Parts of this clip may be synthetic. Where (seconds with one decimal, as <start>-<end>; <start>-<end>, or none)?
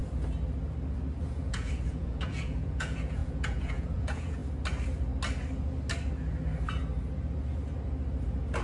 1.2-4.4